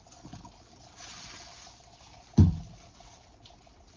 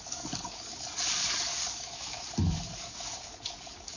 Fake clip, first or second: second